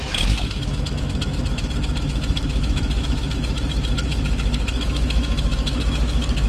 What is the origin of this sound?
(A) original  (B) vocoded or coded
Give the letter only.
B